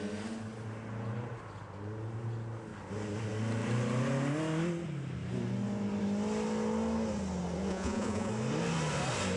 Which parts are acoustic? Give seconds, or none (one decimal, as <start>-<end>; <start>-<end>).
0.0-7.7; 8.3-9.4